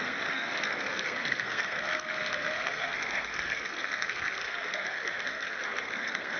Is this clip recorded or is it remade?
remade